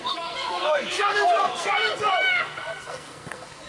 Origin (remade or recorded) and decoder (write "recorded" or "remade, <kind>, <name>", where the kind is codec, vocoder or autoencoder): remade, codec, SNAC